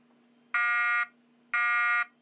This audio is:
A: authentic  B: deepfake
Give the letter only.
A